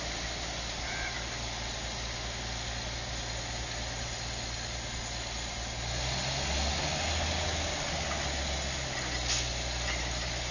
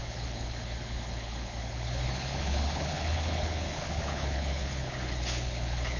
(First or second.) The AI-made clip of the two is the second